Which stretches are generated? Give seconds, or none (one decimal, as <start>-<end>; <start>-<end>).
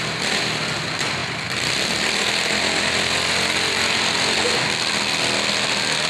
1.2-4.4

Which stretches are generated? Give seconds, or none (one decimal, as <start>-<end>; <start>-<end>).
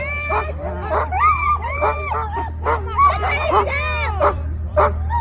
0.0-1.0; 4.1-5.2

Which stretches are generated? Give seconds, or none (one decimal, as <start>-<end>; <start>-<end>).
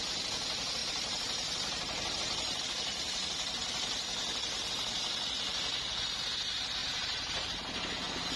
0.8-2.6; 6.8-7.6